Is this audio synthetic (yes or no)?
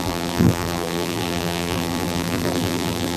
yes